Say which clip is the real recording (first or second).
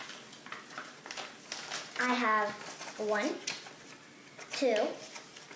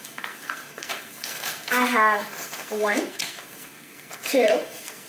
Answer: first